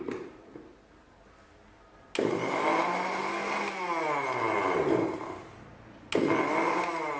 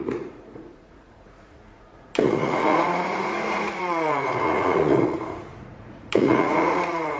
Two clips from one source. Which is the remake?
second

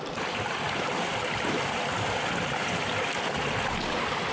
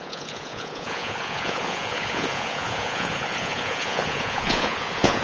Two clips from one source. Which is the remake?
second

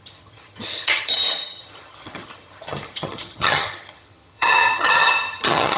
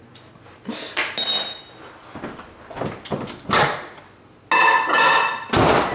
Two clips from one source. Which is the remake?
first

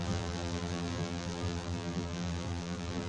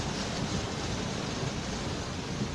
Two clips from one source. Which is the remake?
first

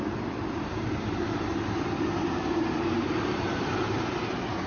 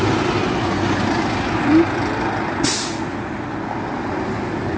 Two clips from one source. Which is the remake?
first